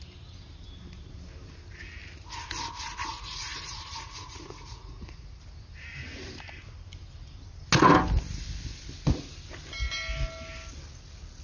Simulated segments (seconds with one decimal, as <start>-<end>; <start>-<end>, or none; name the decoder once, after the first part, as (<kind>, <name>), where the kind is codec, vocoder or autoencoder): 3.1-5.4 (vocoder, Vocos)